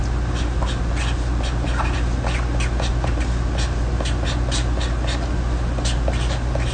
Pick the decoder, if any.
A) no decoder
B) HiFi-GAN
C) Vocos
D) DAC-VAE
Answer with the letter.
A